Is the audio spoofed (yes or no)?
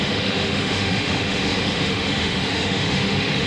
yes